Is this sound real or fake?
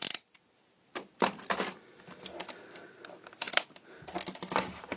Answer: real